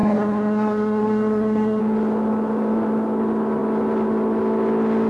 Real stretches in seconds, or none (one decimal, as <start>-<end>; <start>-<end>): 1.8-5.1